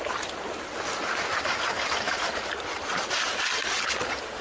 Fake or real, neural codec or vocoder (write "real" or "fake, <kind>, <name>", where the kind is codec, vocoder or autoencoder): real